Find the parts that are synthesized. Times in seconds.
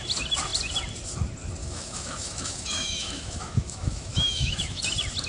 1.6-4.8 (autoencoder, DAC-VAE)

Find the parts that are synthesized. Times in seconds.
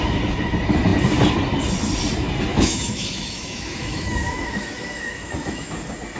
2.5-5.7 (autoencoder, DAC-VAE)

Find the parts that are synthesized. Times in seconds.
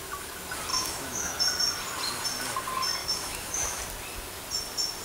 0.7-1.3 (autoencoder, DAC-VAE); 3.0-3.8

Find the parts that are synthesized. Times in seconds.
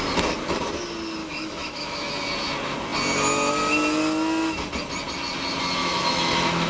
1.2-2.1 (autoencoder, DAC-VAE); 5.8-6.7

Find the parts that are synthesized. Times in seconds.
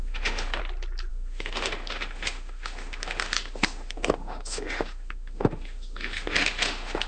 0.0-0.6 (autoencoder, DAC-VAE); 1.1-7.1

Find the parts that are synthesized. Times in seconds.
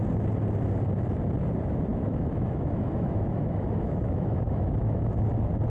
1.9-5.3 (autoencoder, DAC-VAE)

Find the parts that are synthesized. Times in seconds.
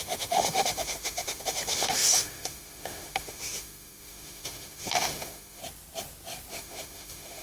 0.0-5.6 (autoencoder, DAC-VAE); 6.5-7.4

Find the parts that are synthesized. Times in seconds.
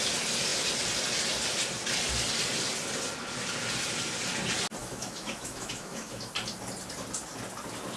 4.8-6.3 (autoencoder, DAC-VAE)